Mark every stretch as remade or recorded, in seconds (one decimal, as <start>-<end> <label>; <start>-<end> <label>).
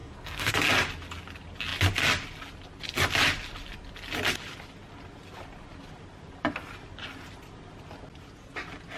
0.0-0.5 remade; 0.5-9.0 recorded